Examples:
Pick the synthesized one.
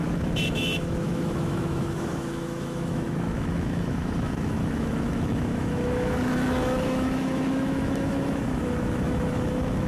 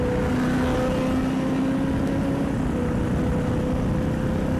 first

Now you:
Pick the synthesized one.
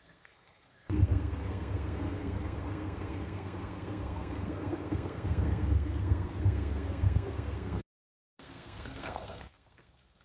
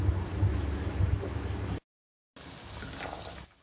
first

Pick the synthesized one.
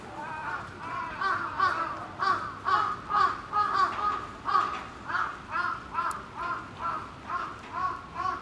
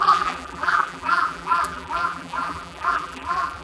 second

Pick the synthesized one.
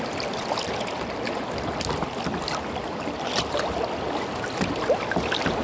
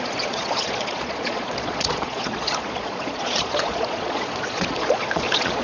second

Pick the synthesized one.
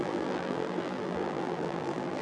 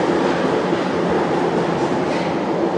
first